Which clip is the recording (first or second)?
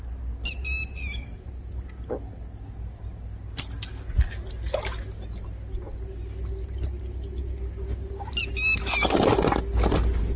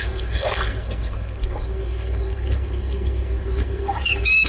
first